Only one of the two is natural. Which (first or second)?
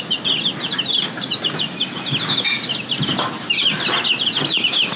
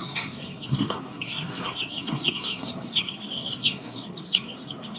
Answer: first